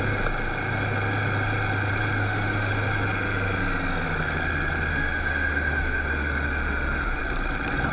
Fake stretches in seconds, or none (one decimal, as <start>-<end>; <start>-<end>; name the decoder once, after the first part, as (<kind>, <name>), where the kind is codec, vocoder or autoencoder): 2.2-2.7 (autoencoder, DAC-VAE); 4.9-7.2